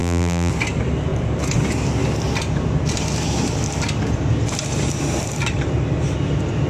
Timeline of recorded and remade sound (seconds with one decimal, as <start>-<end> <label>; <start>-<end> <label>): 0.0-0.5 remade; 0.5-6.7 recorded